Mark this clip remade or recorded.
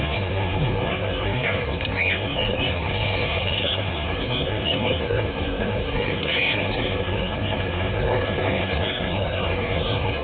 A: remade